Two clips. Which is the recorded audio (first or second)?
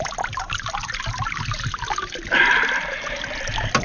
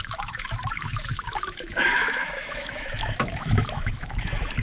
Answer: first